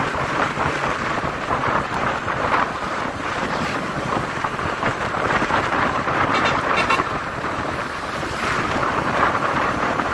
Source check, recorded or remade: remade